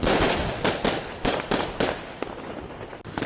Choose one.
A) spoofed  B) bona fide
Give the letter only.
B